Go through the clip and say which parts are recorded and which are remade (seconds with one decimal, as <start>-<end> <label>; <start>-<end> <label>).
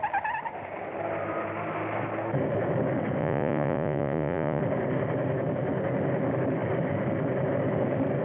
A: 0.0-3.2 recorded; 3.2-4.6 remade; 4.6-8.2 recorded